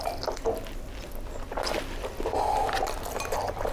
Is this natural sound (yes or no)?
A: yes